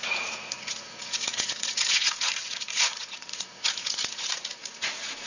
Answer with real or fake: fake